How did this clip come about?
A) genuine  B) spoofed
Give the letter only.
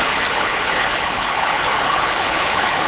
B